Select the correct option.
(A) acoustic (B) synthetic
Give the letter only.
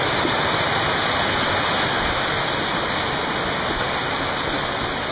A